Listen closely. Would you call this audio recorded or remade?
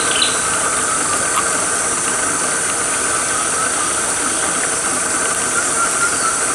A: recorded